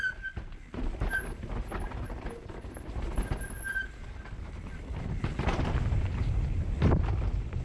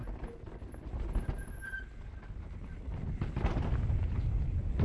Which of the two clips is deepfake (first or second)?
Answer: first